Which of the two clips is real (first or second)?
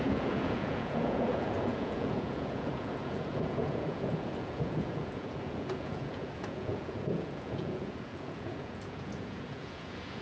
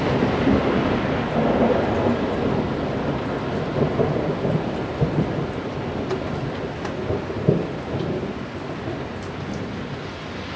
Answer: second